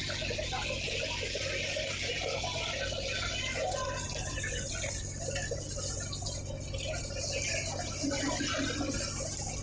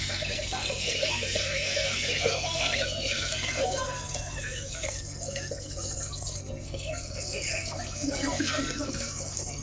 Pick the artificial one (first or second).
second